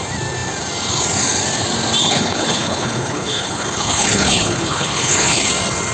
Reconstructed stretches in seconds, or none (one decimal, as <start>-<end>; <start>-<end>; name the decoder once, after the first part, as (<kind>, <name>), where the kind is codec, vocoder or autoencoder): 2.0-5.5 (codec, HILCodec)